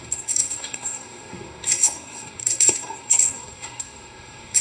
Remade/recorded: remade